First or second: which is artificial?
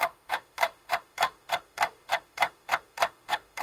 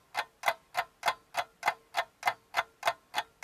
first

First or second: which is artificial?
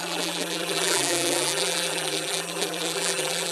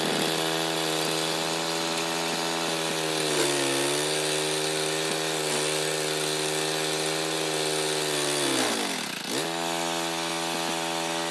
first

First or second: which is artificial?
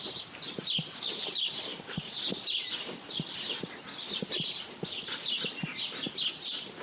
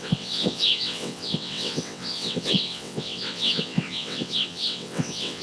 second